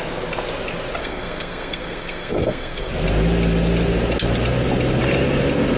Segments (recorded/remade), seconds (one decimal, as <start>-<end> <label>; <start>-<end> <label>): 0.0-1.0 recorded; 1.0-2.9 remade; 2.9-5.8 recorded